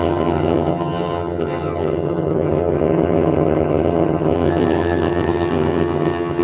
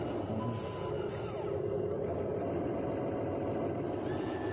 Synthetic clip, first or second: first